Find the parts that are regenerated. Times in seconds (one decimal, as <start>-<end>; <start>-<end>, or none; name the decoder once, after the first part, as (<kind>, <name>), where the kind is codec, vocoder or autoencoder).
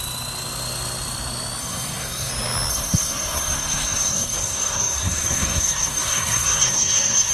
1.6-2.3 (codec, SNAC); 2.7-7.3